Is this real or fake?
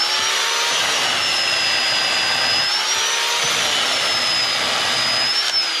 real